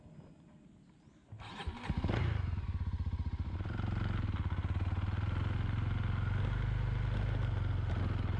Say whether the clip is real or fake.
real